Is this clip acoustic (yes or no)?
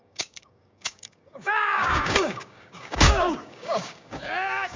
no